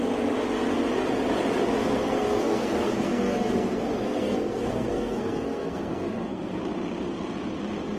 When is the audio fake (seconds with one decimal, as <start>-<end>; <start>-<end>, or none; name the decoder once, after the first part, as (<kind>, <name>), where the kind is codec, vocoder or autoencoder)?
1.8-6.6 (codec, SNAC)